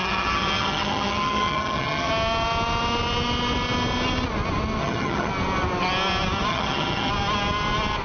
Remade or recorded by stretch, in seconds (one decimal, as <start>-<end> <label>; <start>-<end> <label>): 0.0-2.1 remade; 2.1-4.8 recorded; 4.8-5.3 remade; 5.3-6.5 recorded; 6.5-7.1 remade; 7.1-8.0 recorded